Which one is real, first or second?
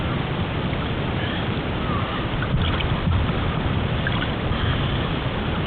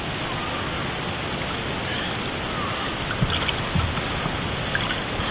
second